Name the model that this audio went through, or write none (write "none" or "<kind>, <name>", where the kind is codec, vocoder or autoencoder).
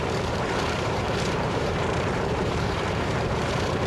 vocoder, BigVGAN v2